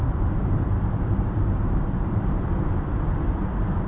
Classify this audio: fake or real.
fake